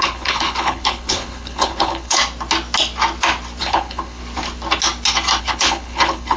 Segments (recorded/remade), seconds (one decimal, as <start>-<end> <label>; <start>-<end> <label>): 0.0-2.2 remade; 2.2-3.6 recorded; 3.6-4.2 remade; 4.2-5.4 recorded; 5.4-6.4 remade